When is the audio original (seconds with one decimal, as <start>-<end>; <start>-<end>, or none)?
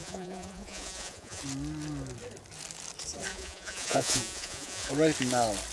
1.4-3.3; 4.9-5.7